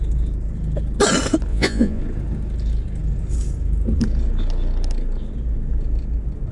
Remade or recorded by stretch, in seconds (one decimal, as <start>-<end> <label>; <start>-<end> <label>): 0.0-1.5 recorded; 1.5-2.0 remade; 2.0-6.5 recorded